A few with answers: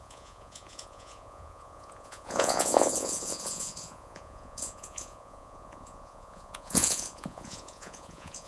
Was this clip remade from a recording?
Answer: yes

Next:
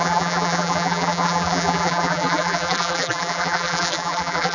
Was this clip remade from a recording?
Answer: yes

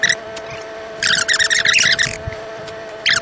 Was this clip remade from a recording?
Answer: no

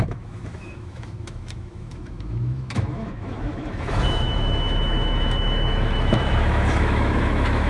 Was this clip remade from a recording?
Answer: yes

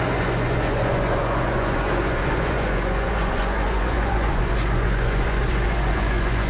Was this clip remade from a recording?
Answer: yes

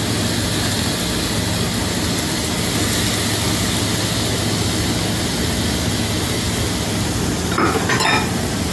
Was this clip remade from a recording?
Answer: no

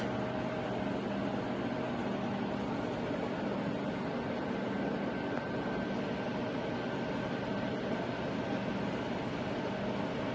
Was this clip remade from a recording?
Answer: no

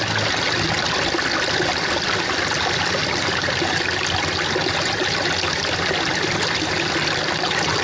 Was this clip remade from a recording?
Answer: no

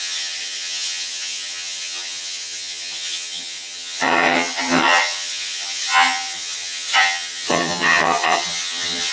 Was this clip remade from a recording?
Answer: yes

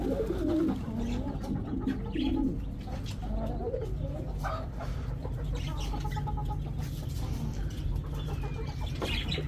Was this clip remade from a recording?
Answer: no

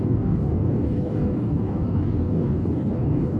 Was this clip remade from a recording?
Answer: yes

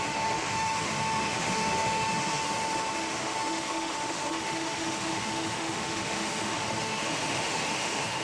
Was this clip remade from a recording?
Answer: yes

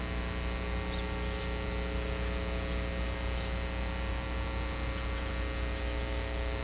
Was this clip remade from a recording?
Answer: no